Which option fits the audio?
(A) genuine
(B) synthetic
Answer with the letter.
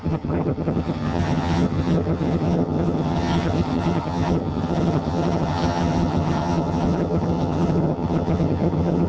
B